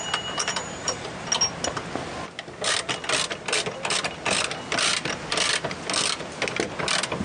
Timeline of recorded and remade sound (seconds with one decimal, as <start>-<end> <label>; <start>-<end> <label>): 0.0-0.6 recorded; 0.6-1.3 remade; 1.3-7.2 recorded